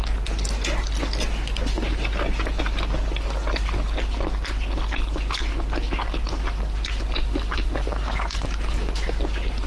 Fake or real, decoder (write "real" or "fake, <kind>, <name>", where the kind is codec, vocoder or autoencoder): real